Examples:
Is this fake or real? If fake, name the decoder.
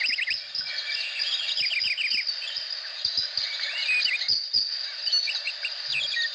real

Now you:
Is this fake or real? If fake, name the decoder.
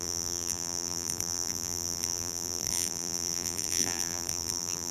fake, vocoder, BigVGAN v2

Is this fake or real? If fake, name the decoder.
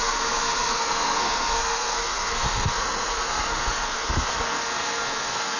fake, codec, SNAC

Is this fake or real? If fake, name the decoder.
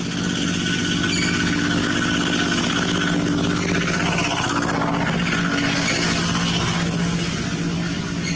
real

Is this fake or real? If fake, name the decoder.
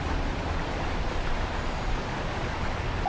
real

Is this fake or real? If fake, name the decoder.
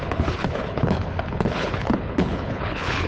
fake, codec, HILCodec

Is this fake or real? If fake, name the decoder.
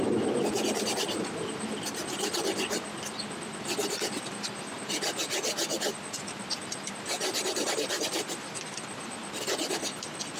real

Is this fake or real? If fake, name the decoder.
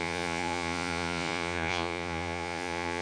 fake, vocoder, Vocos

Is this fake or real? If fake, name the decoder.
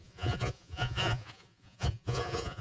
fake, vocoder, Vocos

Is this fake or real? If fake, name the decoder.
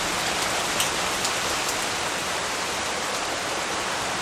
real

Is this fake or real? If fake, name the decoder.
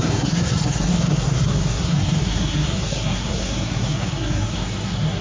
fake, codec, SNAC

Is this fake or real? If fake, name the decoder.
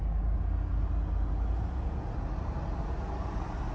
real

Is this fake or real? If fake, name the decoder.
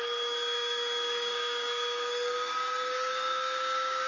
fake, codec, DAC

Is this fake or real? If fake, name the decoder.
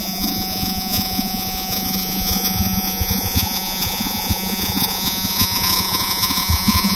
fake, vocoder, Vocos